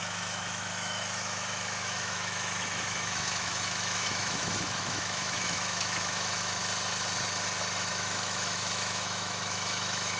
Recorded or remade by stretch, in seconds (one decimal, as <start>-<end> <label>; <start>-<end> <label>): 0.0-6.6 remade; 6.6-7.9 recorded; 7.9-10.2 remade